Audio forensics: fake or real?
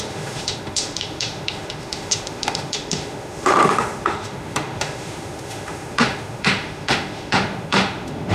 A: fake